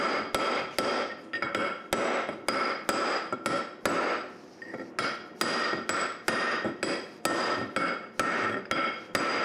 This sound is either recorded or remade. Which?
recorded